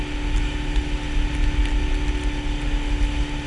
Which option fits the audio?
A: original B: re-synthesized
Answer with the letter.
A